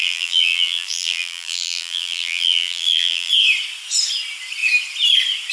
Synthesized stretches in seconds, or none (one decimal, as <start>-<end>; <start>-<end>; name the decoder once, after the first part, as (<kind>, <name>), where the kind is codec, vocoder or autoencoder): 0.0-3.3 (vocoder, BigVGAN v2)